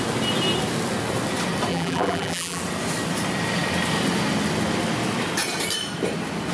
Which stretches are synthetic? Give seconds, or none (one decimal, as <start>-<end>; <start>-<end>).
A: 1.7-2.6